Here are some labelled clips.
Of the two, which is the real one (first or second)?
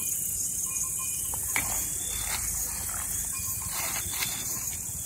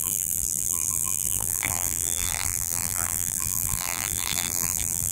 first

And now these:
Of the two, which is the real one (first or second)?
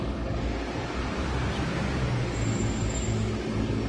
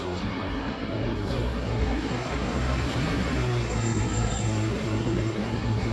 first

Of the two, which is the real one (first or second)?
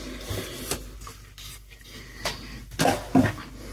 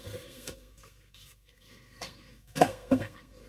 first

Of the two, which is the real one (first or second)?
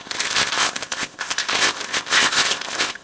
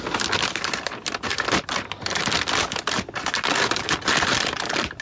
second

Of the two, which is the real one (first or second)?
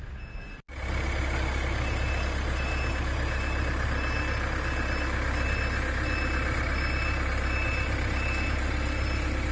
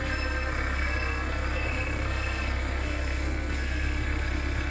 first